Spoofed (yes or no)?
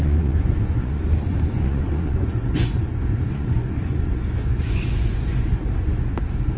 yes